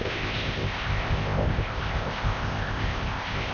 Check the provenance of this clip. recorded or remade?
remade